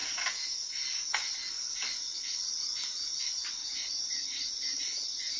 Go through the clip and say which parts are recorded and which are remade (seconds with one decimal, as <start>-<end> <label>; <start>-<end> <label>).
0.0-3.6 recorded; 3.6-5.4 remade